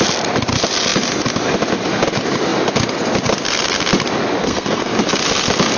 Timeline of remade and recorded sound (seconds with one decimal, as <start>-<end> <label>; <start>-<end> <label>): 0.0-4.4 recorded; 4.4-4.9 remade; 4.9-5.8 recorded